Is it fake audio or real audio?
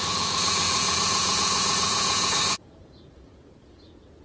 fake